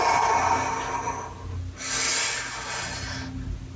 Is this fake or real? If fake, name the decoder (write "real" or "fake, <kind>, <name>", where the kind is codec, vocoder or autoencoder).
real